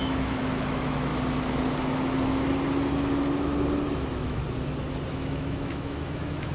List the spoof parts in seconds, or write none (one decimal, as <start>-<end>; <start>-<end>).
0.0-1.1; 3.9-4.4; 5.1-6.5